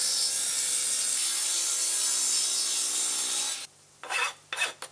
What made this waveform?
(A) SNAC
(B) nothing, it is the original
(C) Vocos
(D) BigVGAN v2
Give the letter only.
B